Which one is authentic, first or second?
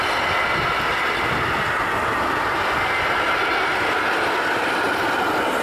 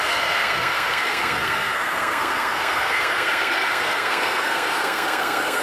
first